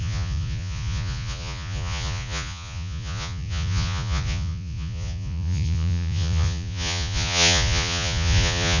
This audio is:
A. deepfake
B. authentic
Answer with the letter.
A